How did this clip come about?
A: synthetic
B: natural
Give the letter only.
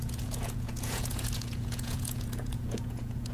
A